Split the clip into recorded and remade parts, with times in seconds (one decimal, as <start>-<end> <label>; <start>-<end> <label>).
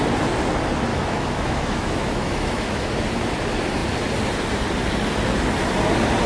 0.0-0.9 recorded; 0.9-2.9 remade; 2.9-6.3 recorded